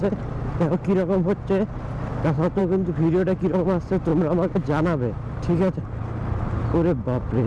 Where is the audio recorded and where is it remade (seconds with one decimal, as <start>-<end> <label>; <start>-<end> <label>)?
0.0-7.5 recorded